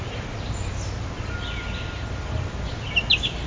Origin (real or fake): real